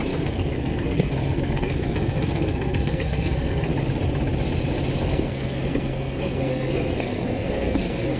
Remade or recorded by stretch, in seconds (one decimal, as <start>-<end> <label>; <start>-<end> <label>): 0.0-3.7 remade; 3.7-5.0 recorded; 5.0-8.2 remade